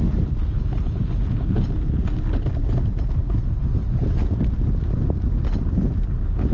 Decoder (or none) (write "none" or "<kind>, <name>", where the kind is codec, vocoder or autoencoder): none